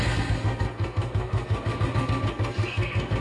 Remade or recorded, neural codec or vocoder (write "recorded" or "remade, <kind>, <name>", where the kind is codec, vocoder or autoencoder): remade, codec, SNAC